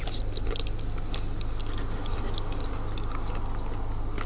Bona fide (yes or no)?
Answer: yes